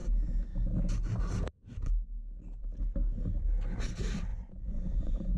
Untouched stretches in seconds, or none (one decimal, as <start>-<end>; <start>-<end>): 0.0-4.3